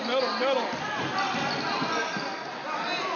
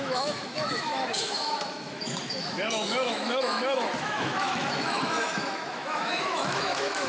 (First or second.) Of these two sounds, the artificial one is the second